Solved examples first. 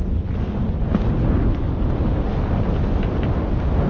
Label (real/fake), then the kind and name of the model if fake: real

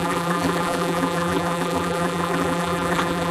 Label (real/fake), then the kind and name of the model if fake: fake, vocoder, BigVGAN v2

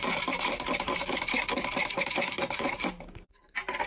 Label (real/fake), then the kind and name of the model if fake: fake, vocoder, BigVGAN v2